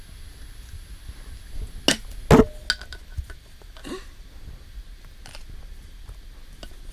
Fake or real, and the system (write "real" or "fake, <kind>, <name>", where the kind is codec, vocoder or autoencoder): real